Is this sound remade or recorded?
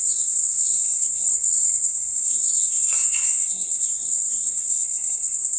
remade